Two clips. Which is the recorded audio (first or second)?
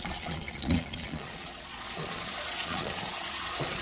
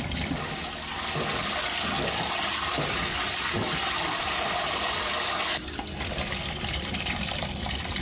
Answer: second